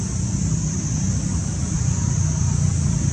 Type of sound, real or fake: real